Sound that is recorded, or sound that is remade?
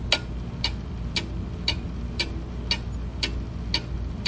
recorded